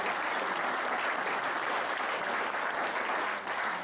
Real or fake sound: real